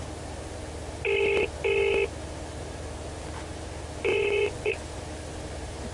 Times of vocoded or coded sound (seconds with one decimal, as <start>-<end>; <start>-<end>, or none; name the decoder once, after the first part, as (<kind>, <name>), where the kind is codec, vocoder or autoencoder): 4.1-4.7 (vocoder, Vocos)